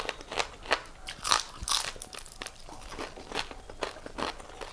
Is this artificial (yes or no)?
no